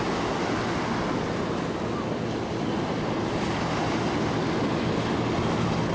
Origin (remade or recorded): recorded